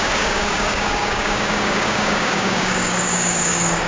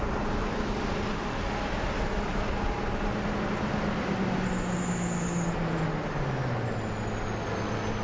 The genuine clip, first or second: second